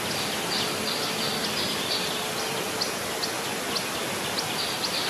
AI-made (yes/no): no